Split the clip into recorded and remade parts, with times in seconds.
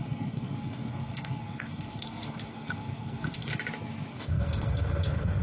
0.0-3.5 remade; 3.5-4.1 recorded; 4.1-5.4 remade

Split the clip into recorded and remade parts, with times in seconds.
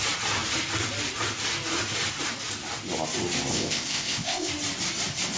0.0-3.5 recorded; 3.5-4.5 remade; 4.5-5.4 recorded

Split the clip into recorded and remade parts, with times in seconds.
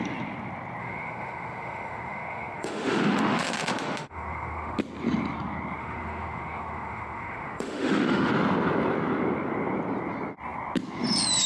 0.0-0.8 recorded; 0.8-4.8 remade; 4.8-5.8 recorded; 5.8-8.3 remade; 8.3-11.5 recorded